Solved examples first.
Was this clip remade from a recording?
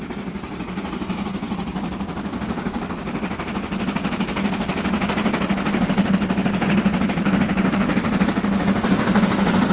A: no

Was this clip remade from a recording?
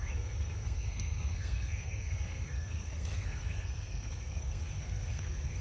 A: yes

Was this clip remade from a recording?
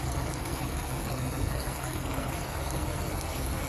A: yes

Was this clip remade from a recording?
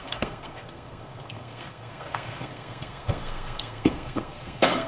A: yes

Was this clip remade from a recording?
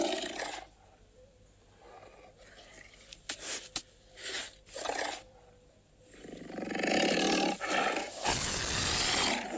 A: no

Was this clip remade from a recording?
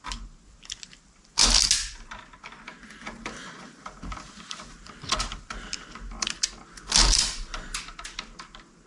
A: no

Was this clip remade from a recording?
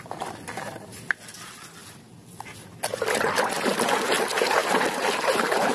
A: no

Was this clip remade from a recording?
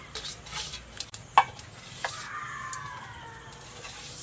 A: no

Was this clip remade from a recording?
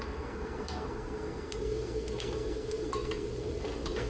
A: yes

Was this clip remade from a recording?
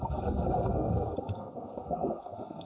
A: yes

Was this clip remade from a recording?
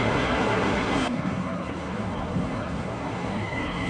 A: yes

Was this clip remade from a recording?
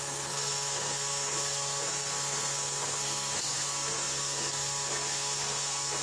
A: yes